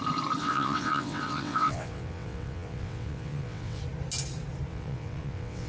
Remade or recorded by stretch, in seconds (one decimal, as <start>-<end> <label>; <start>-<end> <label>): 0.0-0.4 recorded; 0.4-3.8 remade; 3.8-4.7 recorded; 4.7-5.7 remade